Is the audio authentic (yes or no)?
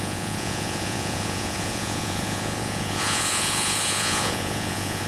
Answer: no